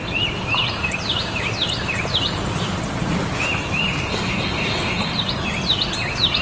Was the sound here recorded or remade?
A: remade